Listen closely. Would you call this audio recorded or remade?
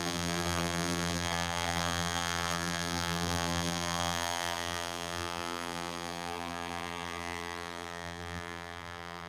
remade